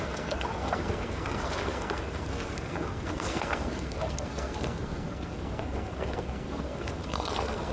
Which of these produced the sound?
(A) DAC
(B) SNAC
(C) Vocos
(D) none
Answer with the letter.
B